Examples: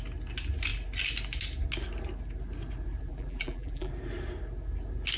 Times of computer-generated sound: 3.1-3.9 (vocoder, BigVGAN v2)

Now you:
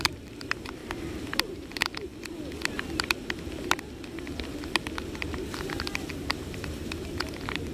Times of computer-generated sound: 0.0-0.8 (vocoder, BigVGAN v2); 1.5-2.1; 6.1-7.7

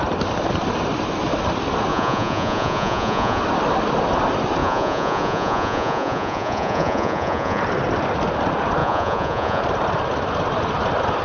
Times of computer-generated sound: 1.9-3.4 (vocoder, Vocos); 4.6-7.6; 8.8-9.6

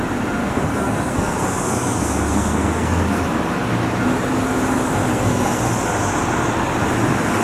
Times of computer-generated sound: 0.4-3.2 (codec, SNAC); 5.1-5.6

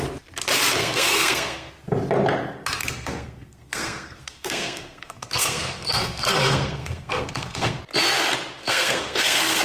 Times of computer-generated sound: 0.8-1.7 (codec, SNAC); 2.8-7.8; 8.6-9.6

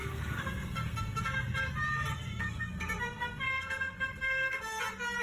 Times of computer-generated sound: 0.0-1.2 (codec, SNAC); 2.1-4.8